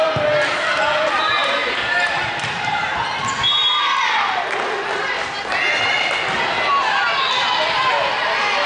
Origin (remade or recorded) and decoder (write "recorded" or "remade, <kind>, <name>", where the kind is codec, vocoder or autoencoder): recorded